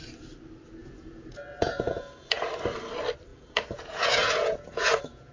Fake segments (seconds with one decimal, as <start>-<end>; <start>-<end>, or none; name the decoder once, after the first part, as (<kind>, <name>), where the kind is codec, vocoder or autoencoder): 0.8-2.5 (vocoder, Vocos); 3.3-5.3